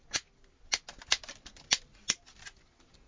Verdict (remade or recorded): recorded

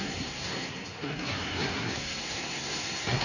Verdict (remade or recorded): remade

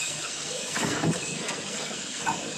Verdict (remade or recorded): remade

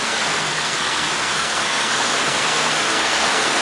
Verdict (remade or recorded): remade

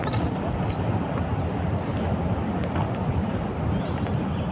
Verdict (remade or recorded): recorded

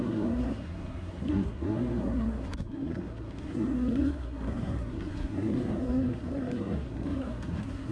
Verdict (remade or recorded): remade